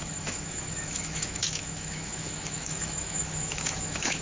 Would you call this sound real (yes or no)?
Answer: no